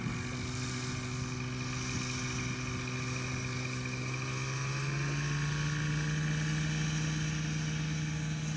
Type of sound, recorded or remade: recorded